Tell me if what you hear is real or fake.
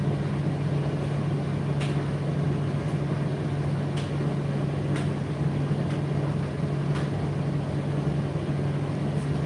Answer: real